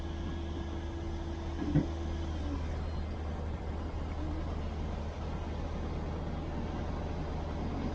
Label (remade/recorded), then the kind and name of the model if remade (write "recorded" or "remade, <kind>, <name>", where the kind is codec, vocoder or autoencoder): recorded